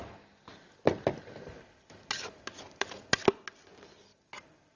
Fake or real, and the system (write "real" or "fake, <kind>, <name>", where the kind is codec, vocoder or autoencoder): real